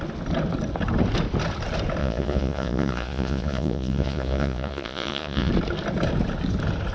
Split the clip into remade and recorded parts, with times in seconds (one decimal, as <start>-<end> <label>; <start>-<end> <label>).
0.0-2.0 recorded; 2.0-5.5 remade; 5.5-6.9 recorded